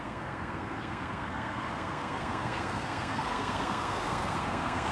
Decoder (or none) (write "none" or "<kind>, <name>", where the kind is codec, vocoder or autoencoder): codec, SNAC